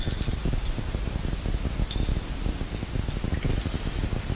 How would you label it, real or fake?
real